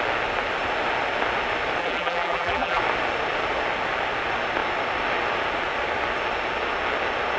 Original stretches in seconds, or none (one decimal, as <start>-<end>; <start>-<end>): 0.0-1.8; 2.8-7.4